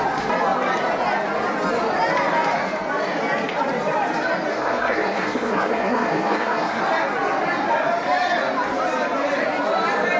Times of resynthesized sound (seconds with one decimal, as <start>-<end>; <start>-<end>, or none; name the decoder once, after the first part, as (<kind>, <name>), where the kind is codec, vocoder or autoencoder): 4.5-6.8 (codec, SNAC)